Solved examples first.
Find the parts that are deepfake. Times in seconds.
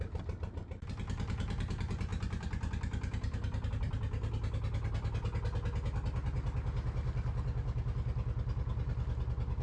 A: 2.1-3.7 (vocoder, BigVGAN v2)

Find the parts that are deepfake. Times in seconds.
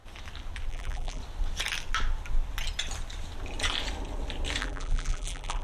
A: 0.7-1.2 (vocoder, BigVGAN v2); 4.6-5.6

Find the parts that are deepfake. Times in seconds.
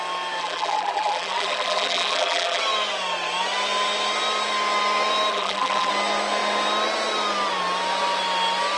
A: 0.4-2.6 (vocoder, BigVGAN v2); 5.3-5.9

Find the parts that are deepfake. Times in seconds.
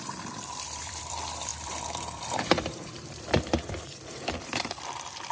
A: 0.0-5.3 (vocoder, BigVGAN v2)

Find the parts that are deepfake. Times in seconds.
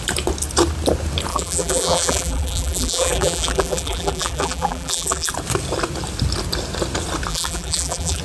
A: 1.3-5.3 (vocoder, BigVGAN v2); 7.3-8.2